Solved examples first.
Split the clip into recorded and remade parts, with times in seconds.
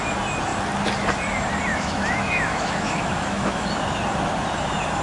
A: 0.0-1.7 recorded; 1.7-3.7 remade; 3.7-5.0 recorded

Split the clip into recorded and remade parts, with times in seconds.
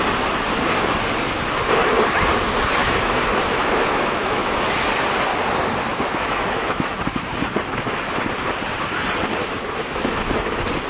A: 0.0-2.8 recorded; 2.8-4.6 remade; 4.6-5.9 recorded; 5.9-7.0 remade; 7.0-9.4 recorded; 9.4-10.5 remade; 10.5-10.9 recorded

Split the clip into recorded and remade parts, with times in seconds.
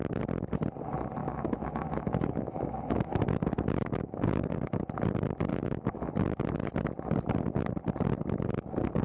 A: 0.0-1.2 recorded; 1.2-4.9 remade; 4.9-5.5 recorded; 5.5-6.1 remade; 6.1-9.0 recorded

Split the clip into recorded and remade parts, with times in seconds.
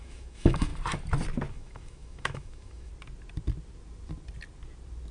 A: 0.0-0.7 remade; 0.7-1.5 recorded; 1.5-2.9 remade; 2.9-5.1 recorded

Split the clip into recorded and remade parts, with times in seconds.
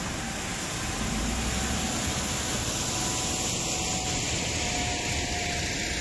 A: 0.0-6.0 recorded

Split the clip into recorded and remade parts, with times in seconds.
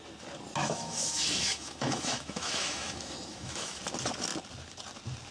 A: 0.0-0.6 recorded; 0.6-3.8 remade; 3.8-5.3 recorded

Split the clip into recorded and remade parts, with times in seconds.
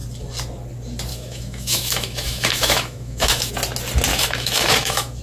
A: 0.0-1.1 recorded; 1.1-3.5 remade; 3.5-4.1 recorded; 4.1-5.2 remade